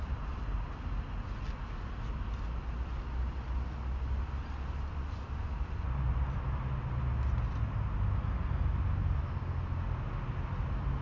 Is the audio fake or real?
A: real